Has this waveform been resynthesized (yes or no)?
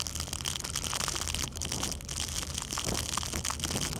no